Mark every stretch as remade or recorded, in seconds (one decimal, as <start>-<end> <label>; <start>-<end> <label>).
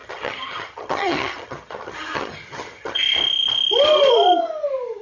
0.0-3.0 remade; 3.0-5.0 recorded